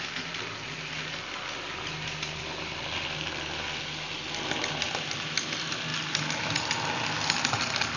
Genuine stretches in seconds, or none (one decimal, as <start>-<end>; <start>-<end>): 0.0-8.0